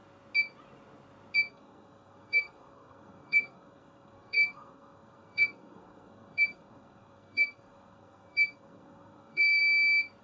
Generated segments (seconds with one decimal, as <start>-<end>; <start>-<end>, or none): 1.5-9.6